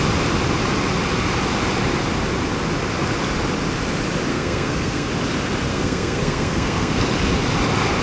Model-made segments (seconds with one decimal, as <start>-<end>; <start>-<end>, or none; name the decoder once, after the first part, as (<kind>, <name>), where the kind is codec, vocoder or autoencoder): 4.3-5.1 (codec, SNAC); 5.7-7.0